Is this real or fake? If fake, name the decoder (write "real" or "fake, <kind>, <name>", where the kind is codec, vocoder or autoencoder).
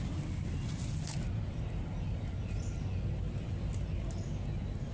real